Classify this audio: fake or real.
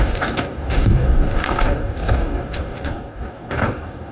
fake